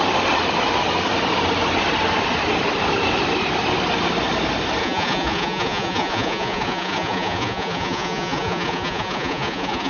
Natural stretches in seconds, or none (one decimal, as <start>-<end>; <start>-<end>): 0.0-4.8